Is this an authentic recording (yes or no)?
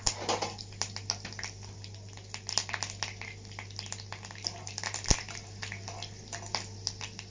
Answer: yes